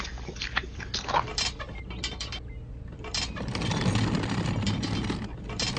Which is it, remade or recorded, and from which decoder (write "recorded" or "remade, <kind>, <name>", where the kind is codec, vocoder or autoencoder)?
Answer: recorded